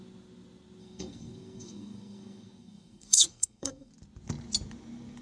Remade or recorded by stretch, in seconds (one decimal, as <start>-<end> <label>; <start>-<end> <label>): 0.0-0.8 recorded; 0.8-3.9 remade; 3.9-5.2 recorded